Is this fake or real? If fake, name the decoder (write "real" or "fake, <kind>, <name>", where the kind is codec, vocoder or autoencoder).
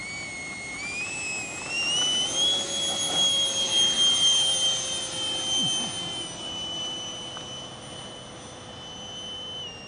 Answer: real